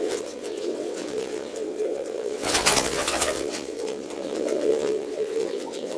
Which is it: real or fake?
fake